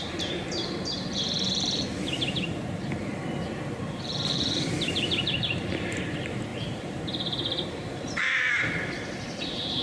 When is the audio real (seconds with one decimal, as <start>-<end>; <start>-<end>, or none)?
3.1-3.8